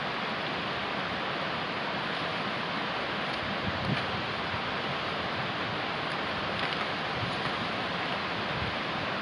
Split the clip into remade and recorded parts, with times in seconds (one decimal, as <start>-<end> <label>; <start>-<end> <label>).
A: 0.0-9.2 recorded